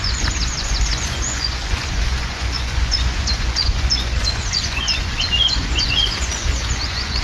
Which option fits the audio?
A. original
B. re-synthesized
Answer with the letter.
B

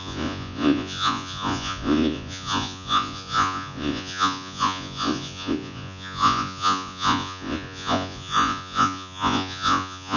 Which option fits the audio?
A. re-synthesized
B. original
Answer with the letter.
A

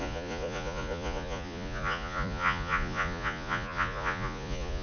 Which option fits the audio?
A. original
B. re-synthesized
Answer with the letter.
B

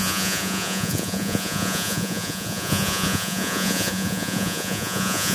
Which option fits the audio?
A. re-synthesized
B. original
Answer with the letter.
A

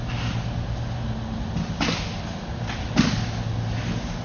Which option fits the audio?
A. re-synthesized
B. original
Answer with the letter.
B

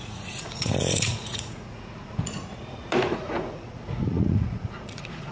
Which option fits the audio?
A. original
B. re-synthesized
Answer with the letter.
B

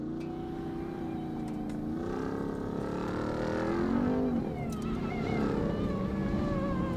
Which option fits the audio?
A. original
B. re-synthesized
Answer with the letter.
A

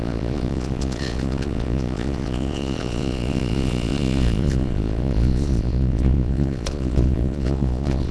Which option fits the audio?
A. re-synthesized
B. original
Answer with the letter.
A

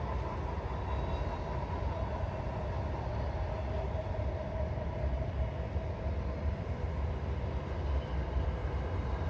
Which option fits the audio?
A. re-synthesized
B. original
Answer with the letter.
B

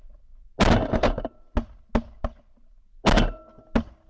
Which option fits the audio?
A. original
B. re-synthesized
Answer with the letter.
A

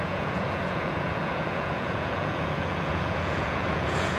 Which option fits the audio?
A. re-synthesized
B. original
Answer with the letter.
A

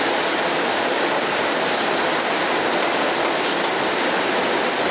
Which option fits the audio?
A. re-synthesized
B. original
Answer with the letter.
B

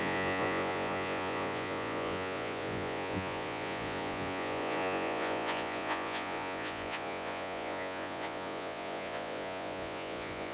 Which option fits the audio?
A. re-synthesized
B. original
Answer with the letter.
A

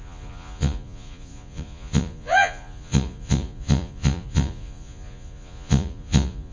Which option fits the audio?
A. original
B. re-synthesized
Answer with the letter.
B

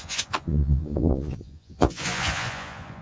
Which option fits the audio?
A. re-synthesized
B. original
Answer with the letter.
A